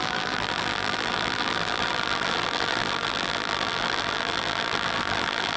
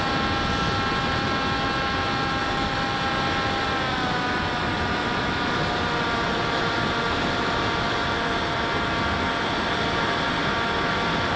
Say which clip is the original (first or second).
second